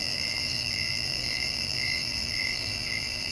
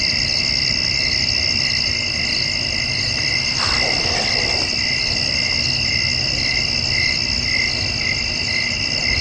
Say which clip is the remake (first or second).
first